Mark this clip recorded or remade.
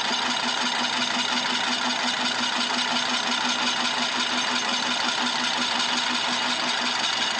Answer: recorded